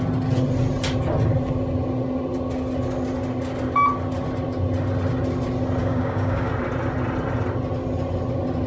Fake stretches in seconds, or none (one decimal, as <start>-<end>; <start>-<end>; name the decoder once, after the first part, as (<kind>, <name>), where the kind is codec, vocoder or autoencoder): 5.8-6.5 (codec, DAC)